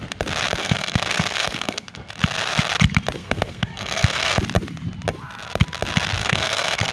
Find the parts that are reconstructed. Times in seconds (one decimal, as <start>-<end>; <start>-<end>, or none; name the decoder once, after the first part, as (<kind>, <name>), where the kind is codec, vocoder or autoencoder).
0.6-2.1 (codec, SNAC); 3.2-4.4; 6.2-6.9